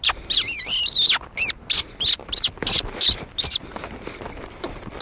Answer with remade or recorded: recorded